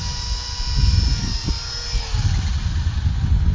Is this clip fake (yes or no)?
no